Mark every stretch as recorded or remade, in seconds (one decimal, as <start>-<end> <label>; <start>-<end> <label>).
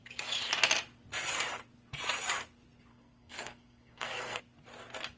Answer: 0.0-2.9 recorded; 2.9-4.4 remade; 4.4-5.2 recorded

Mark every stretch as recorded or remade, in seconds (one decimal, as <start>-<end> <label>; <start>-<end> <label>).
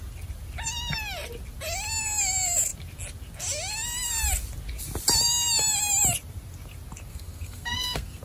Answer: 0.0-7.1 recorded; 7.1-8.2 remade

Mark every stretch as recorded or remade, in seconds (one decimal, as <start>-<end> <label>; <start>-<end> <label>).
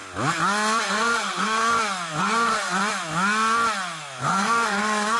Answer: 0.0-0.8 recorded; 0.8-1.6 remade; 1.6-2.2 recorded; 2.2-2.8 remade; 2.8-4.2 recorded; 4.2-5.2 remade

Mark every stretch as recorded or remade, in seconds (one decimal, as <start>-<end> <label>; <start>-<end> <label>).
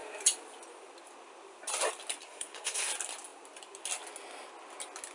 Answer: 0.0-2.2 recorded; 2.2-2.9 remade; 2.9-5.1 recorded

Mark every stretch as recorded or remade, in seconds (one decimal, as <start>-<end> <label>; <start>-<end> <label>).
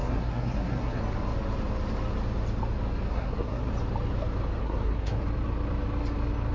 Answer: 0.0-1.0 remade; 1.0-3.1 recorded; 3.1-3.7 remade; 3.7-4.6 recorded; 4.6-5.2 remade; 5.2-6.5 recorded